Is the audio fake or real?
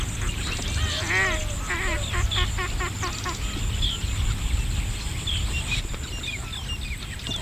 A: real